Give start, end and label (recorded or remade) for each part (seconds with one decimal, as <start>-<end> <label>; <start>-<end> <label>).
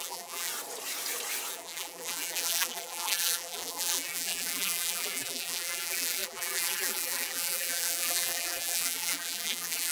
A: 0.0-0.5 remade; 0.5-1.5 recorded; 1.5-9.9 remade